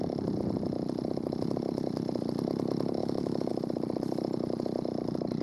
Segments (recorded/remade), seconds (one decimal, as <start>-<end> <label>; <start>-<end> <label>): 0.0-3.0 recorded; 3.0-3.5 remade; 3.5-5.4 recorded